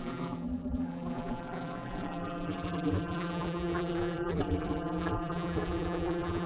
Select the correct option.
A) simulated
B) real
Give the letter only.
A